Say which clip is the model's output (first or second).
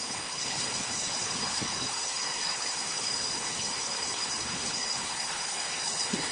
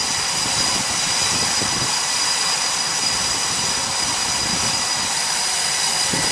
first